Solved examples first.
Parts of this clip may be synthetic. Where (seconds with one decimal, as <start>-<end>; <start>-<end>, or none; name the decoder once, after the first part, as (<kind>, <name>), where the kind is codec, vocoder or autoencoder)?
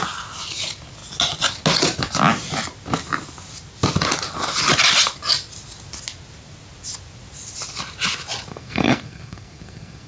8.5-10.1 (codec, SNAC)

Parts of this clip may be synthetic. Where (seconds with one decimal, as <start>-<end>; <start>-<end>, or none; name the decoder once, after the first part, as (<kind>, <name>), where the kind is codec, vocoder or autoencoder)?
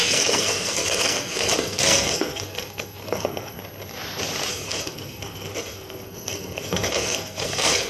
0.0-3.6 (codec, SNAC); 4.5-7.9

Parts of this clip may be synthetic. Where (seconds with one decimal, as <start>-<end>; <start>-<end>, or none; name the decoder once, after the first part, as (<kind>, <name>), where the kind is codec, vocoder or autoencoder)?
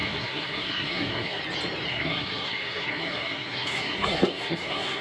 0.0-1.4 (codec, SNAC); 1.9-5.0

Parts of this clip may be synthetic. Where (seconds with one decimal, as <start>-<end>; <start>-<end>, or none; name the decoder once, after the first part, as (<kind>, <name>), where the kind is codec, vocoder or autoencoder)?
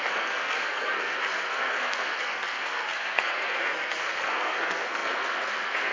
0.0-5.9 (codec, SNAC)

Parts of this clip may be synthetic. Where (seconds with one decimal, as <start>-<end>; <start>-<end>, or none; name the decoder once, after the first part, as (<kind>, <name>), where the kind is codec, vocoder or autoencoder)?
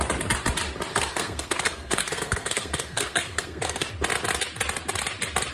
0.9-3.9 (codec, SNAC)